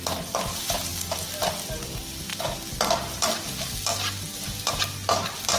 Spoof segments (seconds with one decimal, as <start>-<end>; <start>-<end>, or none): none